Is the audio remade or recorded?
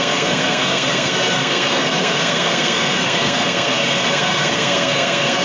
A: remade